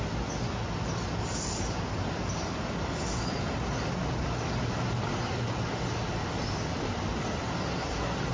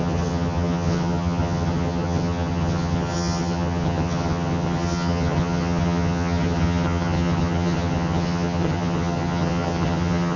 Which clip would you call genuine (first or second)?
first